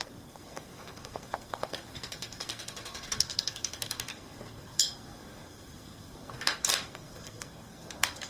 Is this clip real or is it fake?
fake